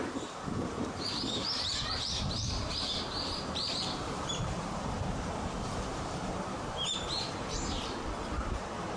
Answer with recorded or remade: remade